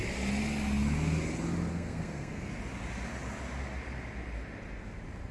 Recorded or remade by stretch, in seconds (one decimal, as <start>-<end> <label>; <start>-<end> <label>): 0.0-1.7 recorded; 1.7-2.5 remade; 2.5-5.3 recorded